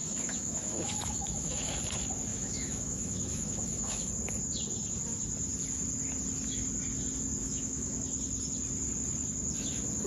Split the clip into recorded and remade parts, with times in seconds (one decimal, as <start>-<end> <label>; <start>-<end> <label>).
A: 0.0-1.8 remade; 1.8-2.3 recorded; 2.3-4.1 remade; 4.1-7.4 recorded; 7.4-7.9 remade; 7.9-10.1 recorded